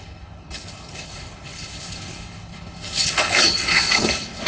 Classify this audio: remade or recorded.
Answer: remade